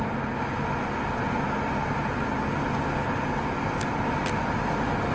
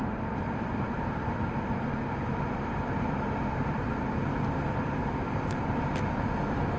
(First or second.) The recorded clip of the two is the first